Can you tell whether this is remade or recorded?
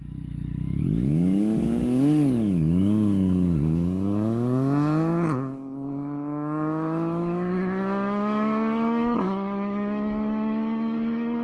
remade